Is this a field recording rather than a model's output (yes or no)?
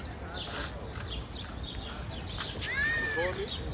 yes